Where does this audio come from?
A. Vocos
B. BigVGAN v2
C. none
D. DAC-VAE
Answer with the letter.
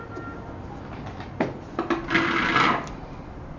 C